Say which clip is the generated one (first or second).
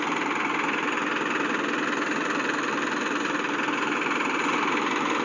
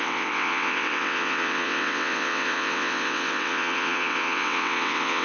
second